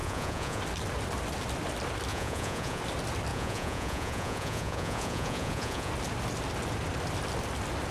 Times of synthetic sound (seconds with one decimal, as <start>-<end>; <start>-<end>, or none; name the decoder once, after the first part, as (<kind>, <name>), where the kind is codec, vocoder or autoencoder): 0.0-0.6 (vocoder, Vocos); 2.1-2.8; 3.3-5.9